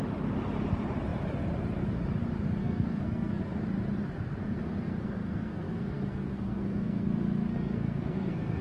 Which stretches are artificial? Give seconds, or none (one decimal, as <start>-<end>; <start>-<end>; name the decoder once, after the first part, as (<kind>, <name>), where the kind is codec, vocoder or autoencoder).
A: 2.6-3.4 (codec, SNAC); 4.4-8.6